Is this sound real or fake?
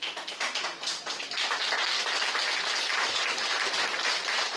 real